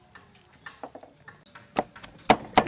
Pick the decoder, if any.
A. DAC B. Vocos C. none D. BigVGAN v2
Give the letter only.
C